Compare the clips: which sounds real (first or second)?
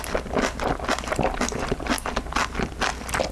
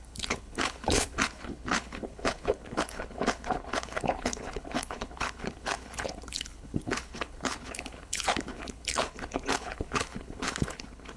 first